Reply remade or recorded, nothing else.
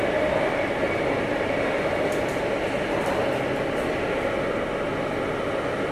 recorded